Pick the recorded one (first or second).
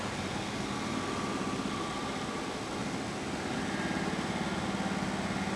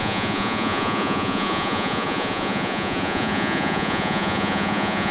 first